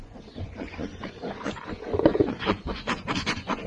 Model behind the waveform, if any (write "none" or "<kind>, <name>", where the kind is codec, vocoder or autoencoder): vocoder, Vocos